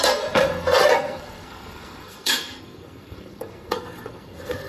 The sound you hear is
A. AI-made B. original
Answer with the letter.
A